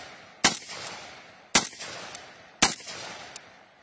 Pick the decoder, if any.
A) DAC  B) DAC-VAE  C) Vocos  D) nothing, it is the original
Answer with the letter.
D